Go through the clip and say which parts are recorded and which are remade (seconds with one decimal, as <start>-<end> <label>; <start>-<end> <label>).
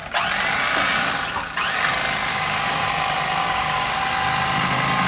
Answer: 0.0-2.3 recorded; 2.3-2.9 remade; 2.9-3.4 recorded; 3.4-4.0 remade; 4.0-5.1 recorded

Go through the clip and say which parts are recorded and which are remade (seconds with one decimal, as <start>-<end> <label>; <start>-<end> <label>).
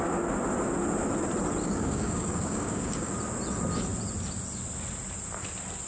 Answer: 0.0-1.6 recorded; 1.6-3.1 remade; 3.1-5.9 recorded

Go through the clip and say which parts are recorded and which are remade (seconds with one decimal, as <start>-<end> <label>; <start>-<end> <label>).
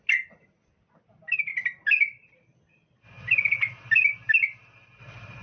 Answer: 0.0-5.4 recorded